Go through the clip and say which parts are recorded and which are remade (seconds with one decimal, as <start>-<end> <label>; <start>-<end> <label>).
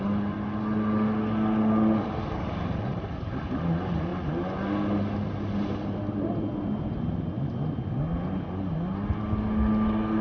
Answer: 0.0-10.2 recorded